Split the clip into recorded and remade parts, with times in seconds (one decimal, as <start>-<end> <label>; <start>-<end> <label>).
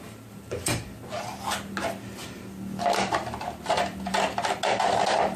0.0-5.4 recorded